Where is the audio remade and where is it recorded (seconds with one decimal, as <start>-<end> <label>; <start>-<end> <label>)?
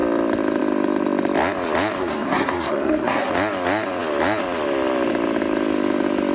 0.0-2.0 recorded; 2.0-3.3 remade; 3.3-6.3 recorded